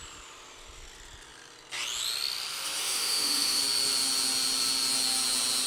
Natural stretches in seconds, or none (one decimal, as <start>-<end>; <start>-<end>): 0.0-2.8; 3.6-5.7

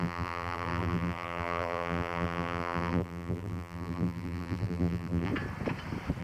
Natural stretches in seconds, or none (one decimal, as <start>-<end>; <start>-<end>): 5.3-6.2

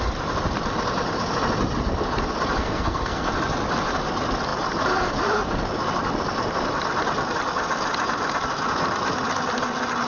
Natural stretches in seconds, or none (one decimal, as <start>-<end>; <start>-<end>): 0.0-2.6; 3.3-10.1

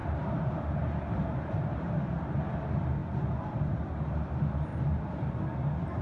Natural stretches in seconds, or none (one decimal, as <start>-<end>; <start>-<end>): 1.9-4.7; 5.3-6.0

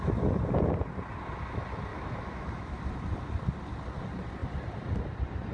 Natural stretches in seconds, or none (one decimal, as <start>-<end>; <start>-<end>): 0.0-1.9; 2.8-5.5

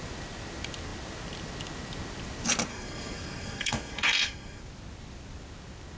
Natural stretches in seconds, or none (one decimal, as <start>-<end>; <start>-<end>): 0.0-2.7; 4.6-6.0

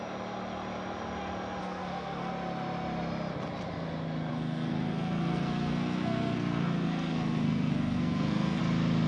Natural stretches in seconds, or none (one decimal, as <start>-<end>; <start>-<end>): 0.0-1.6; 2.3-4.3; 8.6-9.1

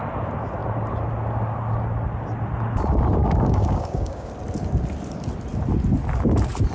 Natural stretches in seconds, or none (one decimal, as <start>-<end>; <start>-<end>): 0.0-3.2; 4.3-6.7